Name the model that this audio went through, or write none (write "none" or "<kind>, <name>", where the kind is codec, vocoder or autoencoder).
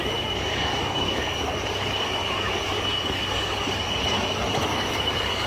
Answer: codec, DAC